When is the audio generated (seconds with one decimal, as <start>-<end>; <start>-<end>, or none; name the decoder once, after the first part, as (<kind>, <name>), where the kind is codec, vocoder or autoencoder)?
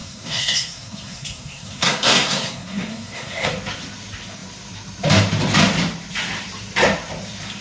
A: 0.0-3.5 (codec, SNAC)